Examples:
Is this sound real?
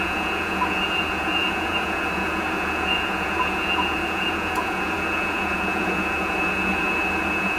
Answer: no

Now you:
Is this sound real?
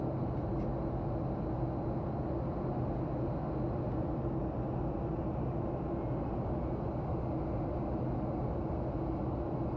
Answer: yes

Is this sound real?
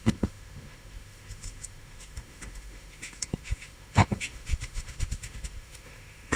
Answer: no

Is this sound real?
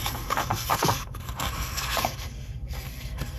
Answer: no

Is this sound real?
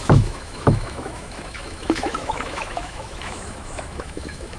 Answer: no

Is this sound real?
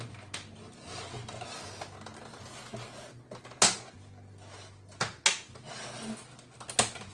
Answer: yes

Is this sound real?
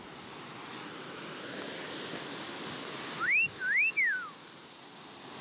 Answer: yes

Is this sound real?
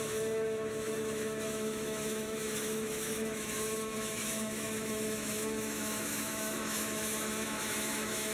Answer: no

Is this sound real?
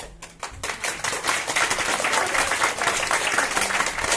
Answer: yes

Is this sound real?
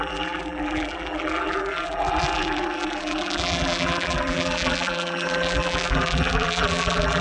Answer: no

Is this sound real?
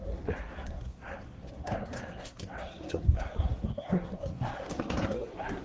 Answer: no